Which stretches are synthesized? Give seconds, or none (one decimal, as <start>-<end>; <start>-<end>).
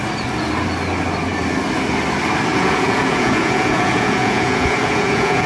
2.5-5.5